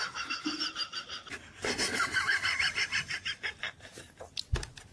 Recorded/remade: remade